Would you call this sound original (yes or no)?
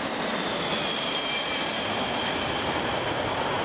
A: no